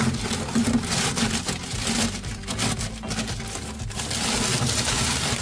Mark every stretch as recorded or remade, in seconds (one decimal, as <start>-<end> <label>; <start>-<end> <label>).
0.0-4.5 recorded; 4.5-5.4 remade